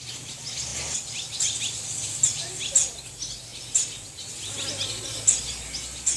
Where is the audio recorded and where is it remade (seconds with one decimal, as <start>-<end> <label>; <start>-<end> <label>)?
0.0-6.2 recorded